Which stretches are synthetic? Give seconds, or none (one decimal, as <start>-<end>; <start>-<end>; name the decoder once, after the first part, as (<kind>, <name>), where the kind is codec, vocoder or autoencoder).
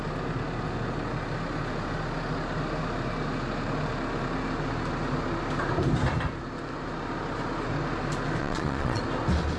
8.4-9.0 (vocoder, Vocos)